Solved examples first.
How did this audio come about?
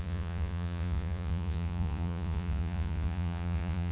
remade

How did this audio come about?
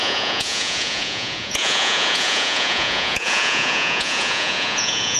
remade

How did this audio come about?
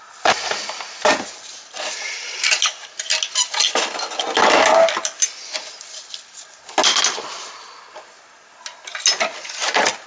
recorded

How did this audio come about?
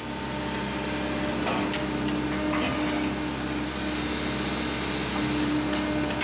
recorded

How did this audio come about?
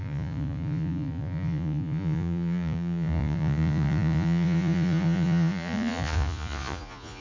remade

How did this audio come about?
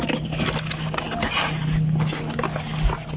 recorded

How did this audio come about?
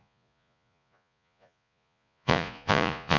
remade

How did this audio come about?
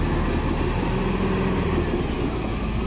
recorded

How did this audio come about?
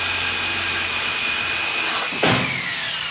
recorded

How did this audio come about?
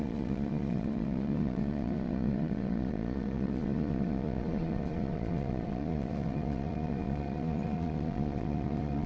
remade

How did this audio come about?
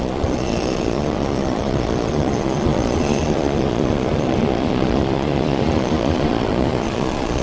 remade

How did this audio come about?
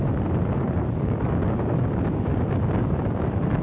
recorded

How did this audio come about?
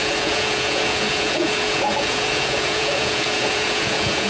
remade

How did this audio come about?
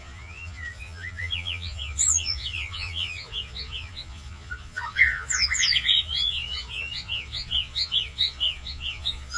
remade